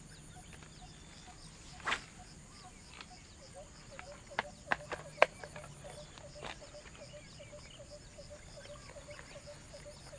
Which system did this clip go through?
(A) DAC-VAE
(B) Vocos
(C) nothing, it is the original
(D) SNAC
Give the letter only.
C